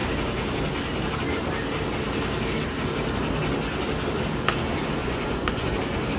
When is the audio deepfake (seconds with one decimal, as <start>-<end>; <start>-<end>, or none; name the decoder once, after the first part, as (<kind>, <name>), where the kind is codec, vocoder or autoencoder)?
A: 5.0-5.7 (vocoder, Vocos)